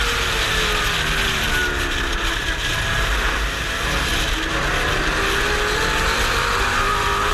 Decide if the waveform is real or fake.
real